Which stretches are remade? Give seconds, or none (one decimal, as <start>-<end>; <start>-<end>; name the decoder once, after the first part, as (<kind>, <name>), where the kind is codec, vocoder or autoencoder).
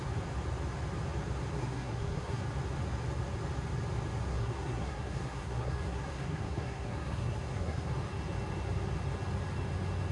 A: 1.5-2.4 (codec, SNAC); 4.3-7.9